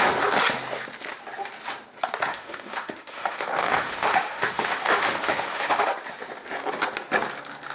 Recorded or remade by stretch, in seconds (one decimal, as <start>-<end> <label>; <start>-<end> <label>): 0.0-2.3 recorded; 2.3-5.9 remade; 5.9-7.7 recorded

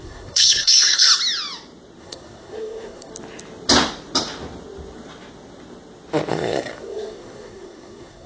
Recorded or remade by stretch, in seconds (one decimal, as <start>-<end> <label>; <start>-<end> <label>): 0.0-1.1 remade; 1.1-2.0 recorded; 2.0-3.1 remade; 3.1-6.3 recorded; 6.3-8.3 remade

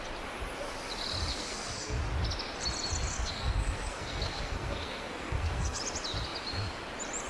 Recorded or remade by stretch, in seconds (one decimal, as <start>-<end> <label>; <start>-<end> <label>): 0.0-1.3 recorded; 1.3-2.0 remade; 2.0-3.1 recorded; 3.1-5.8 remade; 5.8-7.3 recorded

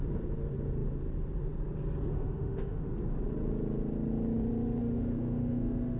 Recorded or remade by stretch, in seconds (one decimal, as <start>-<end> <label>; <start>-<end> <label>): 0.0-2.1 recorded; 2.1-2.9 remade; 2.9-4.8 recorded; 4.8-6.0 remade